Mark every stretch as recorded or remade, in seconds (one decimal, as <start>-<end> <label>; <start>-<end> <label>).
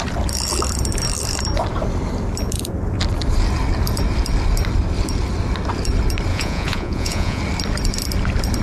0.0-6.3 recorded; 6.3-7.4 remade; 7.4-8.6 recorded